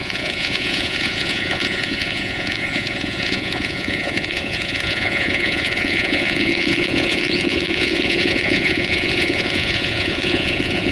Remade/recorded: remade